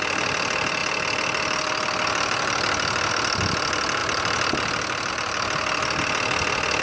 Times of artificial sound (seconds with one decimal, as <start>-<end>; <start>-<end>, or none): none